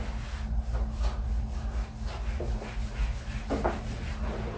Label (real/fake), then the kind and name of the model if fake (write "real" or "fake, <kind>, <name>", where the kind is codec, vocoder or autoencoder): real